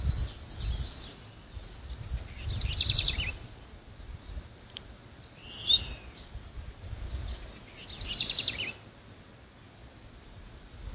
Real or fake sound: real